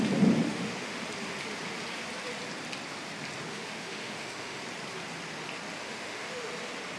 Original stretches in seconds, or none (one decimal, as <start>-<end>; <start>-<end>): 0.0-0.4; 1.0-3.5; 4.6-5.8; 6.5-7.0